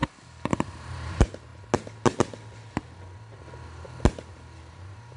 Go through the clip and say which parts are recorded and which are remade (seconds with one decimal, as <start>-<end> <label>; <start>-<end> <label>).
0.0-0.5 recorded; 0.5-1.5 remade; 1.5-4.6 recorded; 4.6-5.2 remade